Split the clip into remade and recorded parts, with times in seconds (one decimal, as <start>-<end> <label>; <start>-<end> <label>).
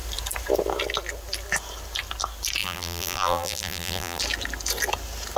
0.0-2.6 recorded; 2.6-4.2 remade; 4.2-5.4 recorded